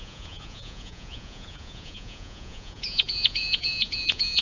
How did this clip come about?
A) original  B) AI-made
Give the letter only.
B